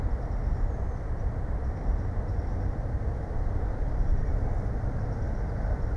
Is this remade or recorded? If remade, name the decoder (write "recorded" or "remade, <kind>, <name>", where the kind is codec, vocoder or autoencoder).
recorded